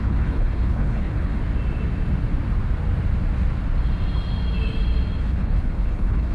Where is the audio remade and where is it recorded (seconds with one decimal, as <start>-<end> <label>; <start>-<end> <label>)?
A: 0.0-1.4 remade; 1.4-5.2 recorded; 5.2-6.3 remade